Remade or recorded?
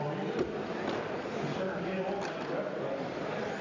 remade